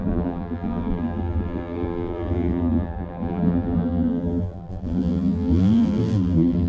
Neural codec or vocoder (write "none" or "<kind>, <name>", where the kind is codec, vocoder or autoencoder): vocoder, BigVGAN v2